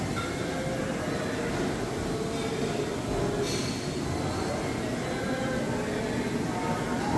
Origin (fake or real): real